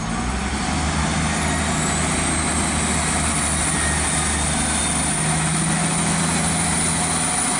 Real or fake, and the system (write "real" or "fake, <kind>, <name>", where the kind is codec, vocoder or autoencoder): real